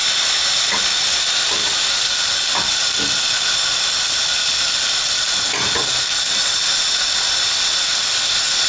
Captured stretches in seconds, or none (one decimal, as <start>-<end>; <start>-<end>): 0.0-8.7

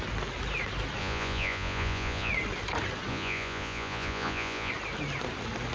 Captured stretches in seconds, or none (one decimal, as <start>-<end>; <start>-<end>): 0.0-1.0; 2.3-3.1; 4.7-5.7

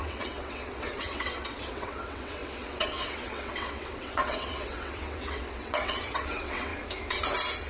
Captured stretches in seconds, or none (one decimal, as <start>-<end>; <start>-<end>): 6.7-7.7

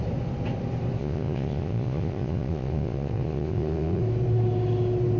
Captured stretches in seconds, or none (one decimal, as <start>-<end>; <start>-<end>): 0.0-1.0; 4.0-5.2

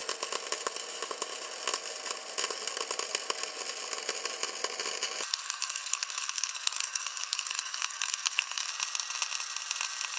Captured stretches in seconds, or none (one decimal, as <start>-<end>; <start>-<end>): 0.0-5.3; 8.7-10.2

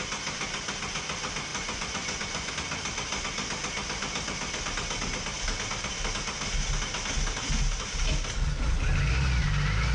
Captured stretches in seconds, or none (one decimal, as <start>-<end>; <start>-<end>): 0.0-1.5; 2.5-9.9